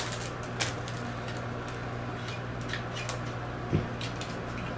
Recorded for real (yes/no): yes